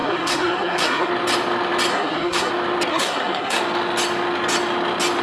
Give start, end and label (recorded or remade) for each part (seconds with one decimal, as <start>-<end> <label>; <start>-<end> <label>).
0.0-1.1 remade; 1.1-1.9 recorded; 1.9-2.5 remade; 2.5-2.9 recorded; 2.9-3.6 remade; 3.6-5.2 recorded